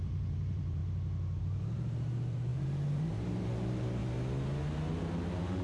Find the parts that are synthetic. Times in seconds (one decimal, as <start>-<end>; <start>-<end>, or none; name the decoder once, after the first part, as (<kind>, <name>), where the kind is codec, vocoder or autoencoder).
0.0-0.8 (vocoder, BigVGAN v2); 1.4-4.0; 4.9-5.6